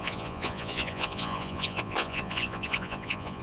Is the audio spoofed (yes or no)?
yes